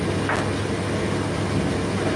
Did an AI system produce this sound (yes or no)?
no